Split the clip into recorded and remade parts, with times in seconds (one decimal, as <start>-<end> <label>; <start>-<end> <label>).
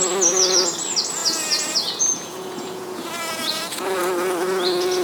0.0-1.2 recorded; 1.2-4.0 remade; 4.0-5.0 recorded